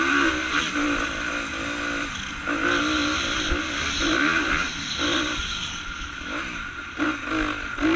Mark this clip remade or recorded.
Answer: recorded